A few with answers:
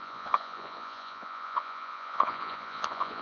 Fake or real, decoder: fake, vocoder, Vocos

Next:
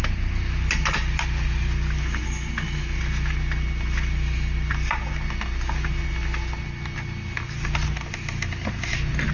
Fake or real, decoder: real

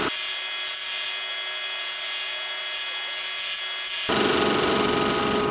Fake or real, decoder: real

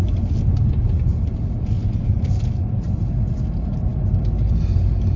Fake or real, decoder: real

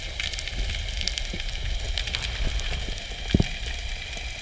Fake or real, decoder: real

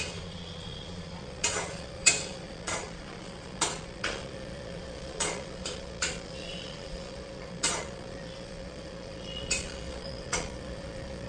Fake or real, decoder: fake, vocoder, Vocos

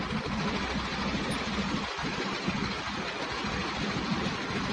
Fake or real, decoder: real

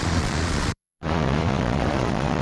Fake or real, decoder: fake, vocoder, Vocos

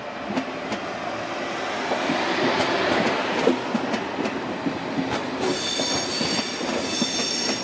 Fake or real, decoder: real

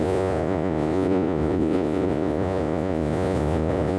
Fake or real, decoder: fake, vocoder, Vocos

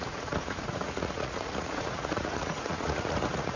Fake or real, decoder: fake, vocoder, Vocos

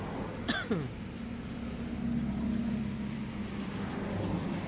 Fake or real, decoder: real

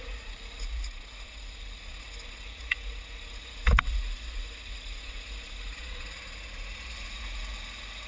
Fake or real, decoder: fake, vocoder, Vocos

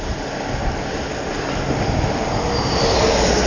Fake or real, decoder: real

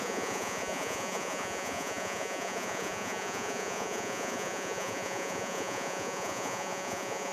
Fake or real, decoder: fake, vocoder, Vocos